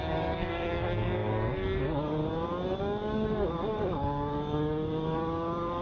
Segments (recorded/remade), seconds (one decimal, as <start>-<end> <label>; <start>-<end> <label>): 0.0-2.2 remade; 2.2-2.8 recorded; 2.8-5.8 remade